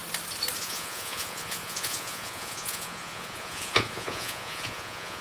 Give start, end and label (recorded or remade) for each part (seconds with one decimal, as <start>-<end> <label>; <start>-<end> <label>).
0.0-0.6 recorded; 0.6-5.2 remade